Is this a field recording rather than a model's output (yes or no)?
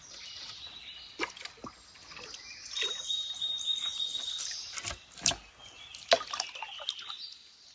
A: yes